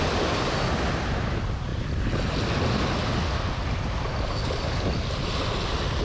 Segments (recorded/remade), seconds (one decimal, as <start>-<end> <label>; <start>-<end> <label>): 0.0-6.0 recorded

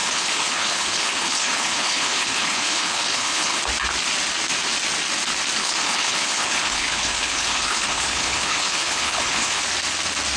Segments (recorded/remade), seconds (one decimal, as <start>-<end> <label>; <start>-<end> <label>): 0.0-3.6 remade; 3.6-5.6 recorded; 5.6-9.6 remade; 9.6-10.4 recorded

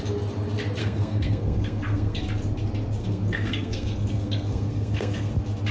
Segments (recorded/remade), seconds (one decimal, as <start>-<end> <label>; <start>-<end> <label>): 0.0-0.8 recorded; 0.8-2.2 remade; 2.2-3.0 recorded; 3.0-5.3 remade; 5.3-5.7 recorded